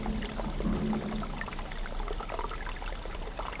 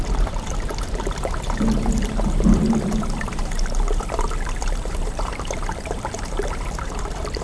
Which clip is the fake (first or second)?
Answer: second